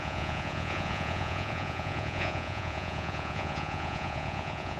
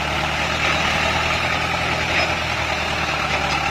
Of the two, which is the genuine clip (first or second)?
second